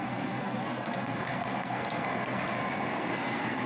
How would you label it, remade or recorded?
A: remade